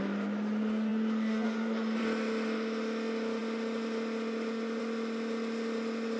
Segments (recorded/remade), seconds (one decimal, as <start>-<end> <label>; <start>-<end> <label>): 0.0-6.2 recorded